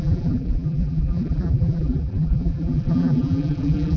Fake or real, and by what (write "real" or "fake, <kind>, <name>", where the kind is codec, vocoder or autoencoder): fake, vocoder, BigVGAN v2